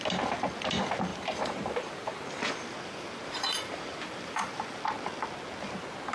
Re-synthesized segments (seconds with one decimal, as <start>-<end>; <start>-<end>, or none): 1.1-4.8